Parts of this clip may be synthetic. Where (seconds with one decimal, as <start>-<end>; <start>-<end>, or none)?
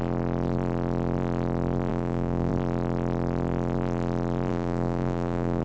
1.9-2.5; 4.5-5.6